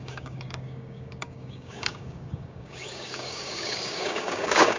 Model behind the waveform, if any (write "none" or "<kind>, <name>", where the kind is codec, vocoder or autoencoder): codec, DAC